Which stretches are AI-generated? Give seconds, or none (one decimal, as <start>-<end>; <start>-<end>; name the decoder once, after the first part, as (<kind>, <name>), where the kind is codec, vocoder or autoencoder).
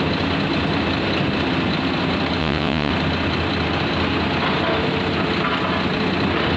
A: 2.4-2.9 (vocoder, WaveNeXt)